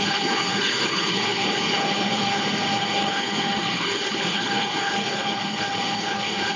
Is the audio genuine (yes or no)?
no